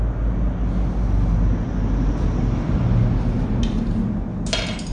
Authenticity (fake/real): real